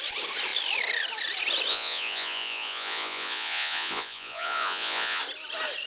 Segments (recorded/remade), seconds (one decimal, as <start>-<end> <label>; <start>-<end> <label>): 0.0-1.7 recorded; 1.7-5.2 remade; 5.2-5.9 recorded